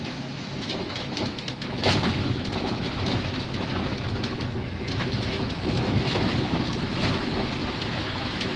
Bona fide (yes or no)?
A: no